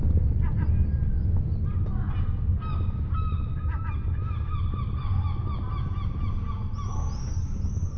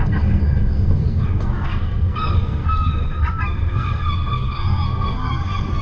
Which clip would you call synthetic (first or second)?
second